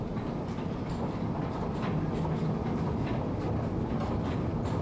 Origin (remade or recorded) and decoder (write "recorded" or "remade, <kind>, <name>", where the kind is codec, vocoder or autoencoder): recorded